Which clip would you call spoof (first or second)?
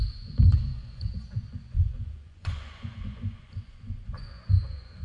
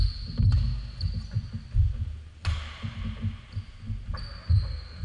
first